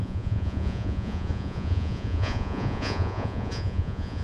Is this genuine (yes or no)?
no